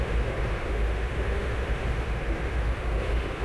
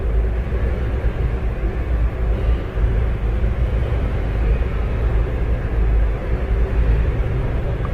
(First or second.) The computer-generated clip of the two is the first